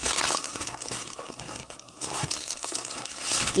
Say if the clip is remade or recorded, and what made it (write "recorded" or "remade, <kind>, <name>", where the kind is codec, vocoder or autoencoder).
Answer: remade, codec, SNAC